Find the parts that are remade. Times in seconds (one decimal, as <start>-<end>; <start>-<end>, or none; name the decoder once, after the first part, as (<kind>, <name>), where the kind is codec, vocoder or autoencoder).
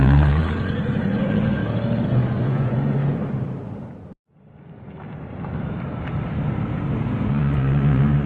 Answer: 0.0-1.6 (vocoder, Vocos); 2.4-3.0; 7.3-8.3